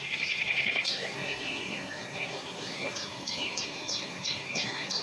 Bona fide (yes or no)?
no